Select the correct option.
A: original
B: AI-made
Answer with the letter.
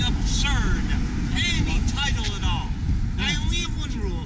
A